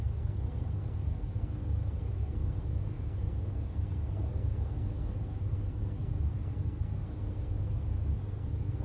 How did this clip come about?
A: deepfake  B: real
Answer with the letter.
A